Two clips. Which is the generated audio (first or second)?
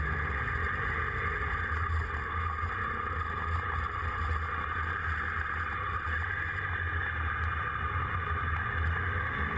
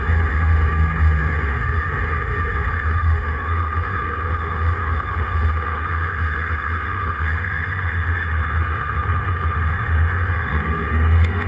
second